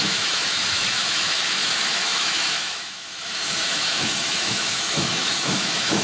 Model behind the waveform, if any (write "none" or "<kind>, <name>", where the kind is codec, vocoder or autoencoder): autoencoder, DAC-VAE